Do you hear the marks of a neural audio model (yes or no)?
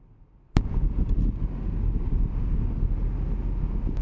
no